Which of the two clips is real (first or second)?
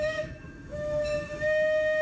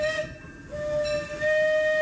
second